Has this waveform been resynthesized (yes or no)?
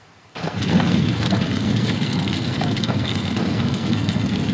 yes